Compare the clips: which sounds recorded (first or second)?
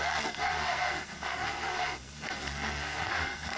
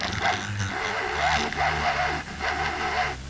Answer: second